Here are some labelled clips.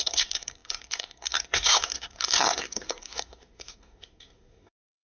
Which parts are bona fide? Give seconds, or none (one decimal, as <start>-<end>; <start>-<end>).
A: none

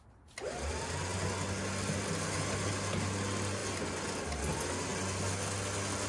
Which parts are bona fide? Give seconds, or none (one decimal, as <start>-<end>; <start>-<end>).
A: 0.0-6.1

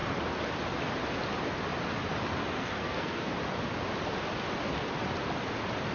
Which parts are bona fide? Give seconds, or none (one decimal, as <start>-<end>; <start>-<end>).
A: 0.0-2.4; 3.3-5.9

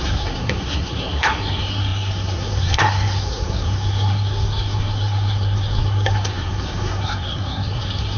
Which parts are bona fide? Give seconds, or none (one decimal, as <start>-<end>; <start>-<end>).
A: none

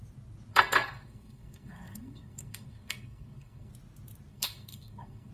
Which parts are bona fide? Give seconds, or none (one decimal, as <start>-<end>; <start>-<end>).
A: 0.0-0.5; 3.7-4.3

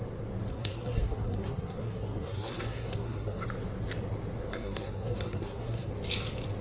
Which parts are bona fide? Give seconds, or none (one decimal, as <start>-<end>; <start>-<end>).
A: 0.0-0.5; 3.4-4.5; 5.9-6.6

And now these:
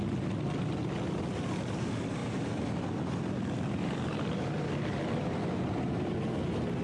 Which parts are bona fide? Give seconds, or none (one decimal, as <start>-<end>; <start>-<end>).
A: 0.0-6.8